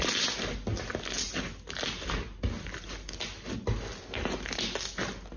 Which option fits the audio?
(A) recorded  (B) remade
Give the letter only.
A